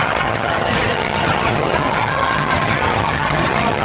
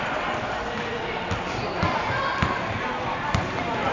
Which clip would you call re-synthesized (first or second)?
first